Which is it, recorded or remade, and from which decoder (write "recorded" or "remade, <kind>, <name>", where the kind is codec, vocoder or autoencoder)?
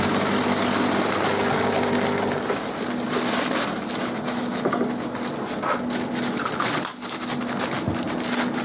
recorded